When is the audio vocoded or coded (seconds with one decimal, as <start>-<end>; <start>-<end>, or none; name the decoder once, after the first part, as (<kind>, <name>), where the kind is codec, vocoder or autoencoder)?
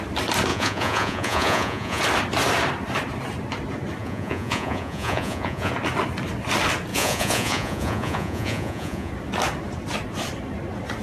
0.5-2.0 (vocoder, Vocos); 4.0-5.7; 6.9-9.1